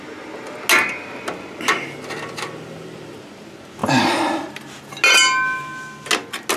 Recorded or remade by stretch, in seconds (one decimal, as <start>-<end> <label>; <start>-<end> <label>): 0.0-3.8 recorded; 3.8-4.7 remade; 4.7-6.6 recorded